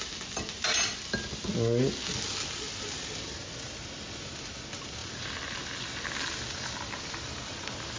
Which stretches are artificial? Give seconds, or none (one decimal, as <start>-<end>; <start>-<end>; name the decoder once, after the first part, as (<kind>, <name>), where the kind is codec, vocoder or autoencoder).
none